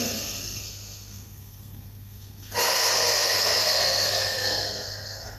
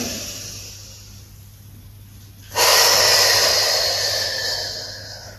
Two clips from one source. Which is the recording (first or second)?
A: second